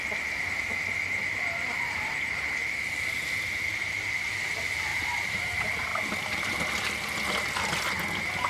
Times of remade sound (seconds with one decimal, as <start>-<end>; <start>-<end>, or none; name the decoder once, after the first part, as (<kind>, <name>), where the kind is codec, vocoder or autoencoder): 4.9-5.4 (vocoder, BigVGAN v2)

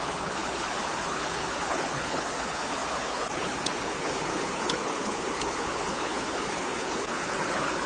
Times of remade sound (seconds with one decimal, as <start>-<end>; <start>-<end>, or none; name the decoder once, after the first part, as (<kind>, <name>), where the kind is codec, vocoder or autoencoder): 0.0-7.9 (codec, HILCodec)

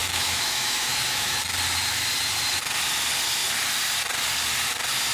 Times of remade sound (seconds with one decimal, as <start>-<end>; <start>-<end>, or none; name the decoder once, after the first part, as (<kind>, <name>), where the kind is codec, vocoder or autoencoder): 0.0-1.4 (autoencoder, DAC-VAE)

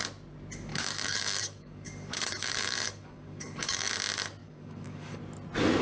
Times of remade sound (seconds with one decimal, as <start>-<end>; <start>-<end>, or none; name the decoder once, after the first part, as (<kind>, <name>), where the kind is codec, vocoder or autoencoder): 0.7-3.9 (codec, DAC); 4.4-5.2

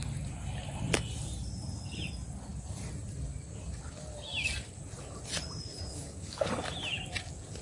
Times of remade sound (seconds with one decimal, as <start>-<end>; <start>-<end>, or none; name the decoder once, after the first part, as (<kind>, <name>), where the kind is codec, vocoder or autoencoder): 5.9-6.5 (codec, DAC)

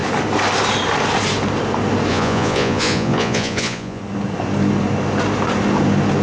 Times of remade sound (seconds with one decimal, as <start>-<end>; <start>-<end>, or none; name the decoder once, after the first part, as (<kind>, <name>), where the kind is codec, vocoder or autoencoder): 2.1-4.0 (vocoder, Vocos)

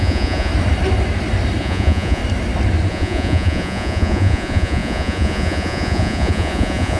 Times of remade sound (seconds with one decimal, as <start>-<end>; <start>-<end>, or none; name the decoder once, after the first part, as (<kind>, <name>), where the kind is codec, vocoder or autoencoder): 0.0-0.5 (vocoder, Vocos); 1.6-2.2; 2.9-7.0

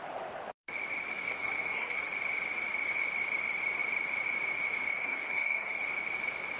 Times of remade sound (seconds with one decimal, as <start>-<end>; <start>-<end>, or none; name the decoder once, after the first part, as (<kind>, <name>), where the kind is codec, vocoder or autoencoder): 1.1-2.1 (codec, SNAC); 4.9-5.8